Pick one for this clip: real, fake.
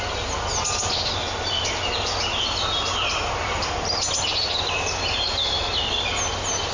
real